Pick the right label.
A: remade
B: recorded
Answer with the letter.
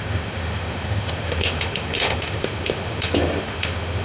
A